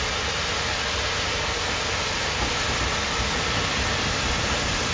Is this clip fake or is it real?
real